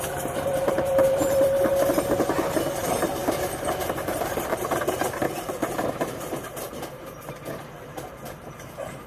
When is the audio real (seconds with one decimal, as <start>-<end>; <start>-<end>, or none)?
1.7-2.8